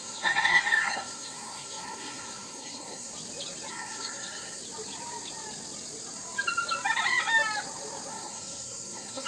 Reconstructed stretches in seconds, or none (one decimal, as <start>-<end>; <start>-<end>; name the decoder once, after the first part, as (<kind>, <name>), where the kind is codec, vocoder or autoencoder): 0.0-3.1 (codec, SNAC); 3.7-4.6; 8.1-9.3